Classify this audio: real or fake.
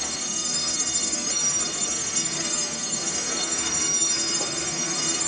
fake